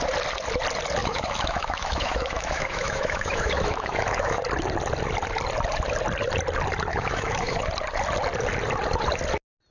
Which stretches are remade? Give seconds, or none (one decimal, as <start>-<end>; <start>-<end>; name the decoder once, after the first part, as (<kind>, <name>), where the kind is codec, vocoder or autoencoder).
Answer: 1.0-4.4 (autoencoder, DAC-VAE); 6.9-7.6